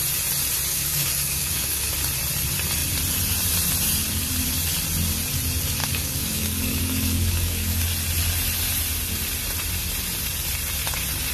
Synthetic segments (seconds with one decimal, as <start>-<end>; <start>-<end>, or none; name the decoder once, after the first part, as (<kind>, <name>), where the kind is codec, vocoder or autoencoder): 0.7-1.9 (codec, DAC); 5.8-7.8